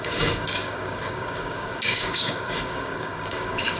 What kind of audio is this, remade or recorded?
remade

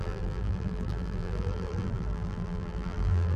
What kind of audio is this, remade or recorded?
remade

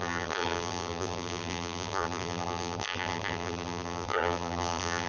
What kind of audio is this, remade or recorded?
remade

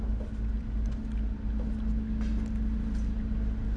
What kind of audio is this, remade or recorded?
recorded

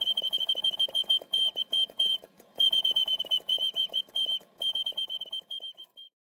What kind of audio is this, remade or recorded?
remade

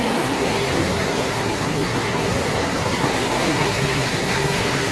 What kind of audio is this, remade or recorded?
remade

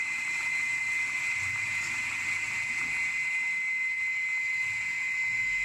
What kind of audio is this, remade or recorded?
recorded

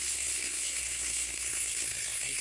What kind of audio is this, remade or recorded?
remade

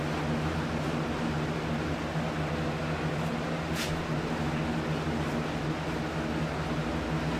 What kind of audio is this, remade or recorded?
recorded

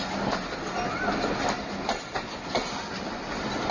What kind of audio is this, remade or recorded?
recorded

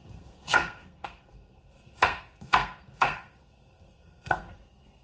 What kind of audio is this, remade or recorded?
remade